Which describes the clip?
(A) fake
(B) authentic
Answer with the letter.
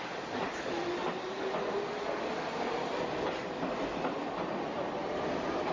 B